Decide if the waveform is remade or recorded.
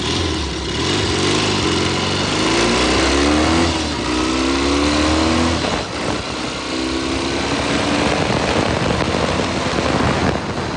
recorded